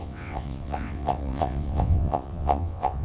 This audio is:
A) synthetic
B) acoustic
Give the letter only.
A